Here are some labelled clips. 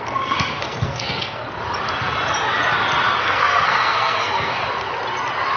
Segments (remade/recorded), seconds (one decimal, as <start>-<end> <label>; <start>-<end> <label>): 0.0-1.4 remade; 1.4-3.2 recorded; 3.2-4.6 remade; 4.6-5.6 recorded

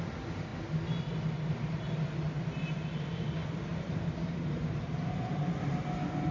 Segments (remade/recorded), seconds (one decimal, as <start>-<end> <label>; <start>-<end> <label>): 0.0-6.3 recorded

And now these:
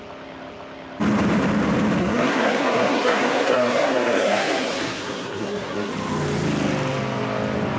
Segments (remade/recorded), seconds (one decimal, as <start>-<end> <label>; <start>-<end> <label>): 0.0-2.0 recorded; 2.0-5.9 remade; 5.9-7.8 recorded